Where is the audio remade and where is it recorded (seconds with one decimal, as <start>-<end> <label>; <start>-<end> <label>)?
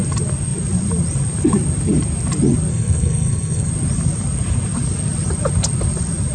0.0-2.7 recorded; 2.7-3.7 remade; 3.7-6.3 recorded